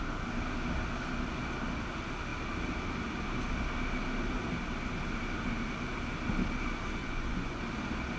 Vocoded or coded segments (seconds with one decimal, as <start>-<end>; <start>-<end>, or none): 7.0-7.6